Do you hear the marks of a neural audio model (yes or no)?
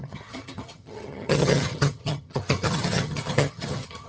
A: yes